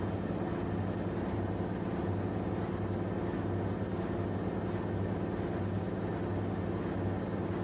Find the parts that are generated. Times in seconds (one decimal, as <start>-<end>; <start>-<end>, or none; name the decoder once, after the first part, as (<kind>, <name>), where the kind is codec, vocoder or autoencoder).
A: none